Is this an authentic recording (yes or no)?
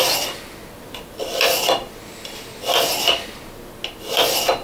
yes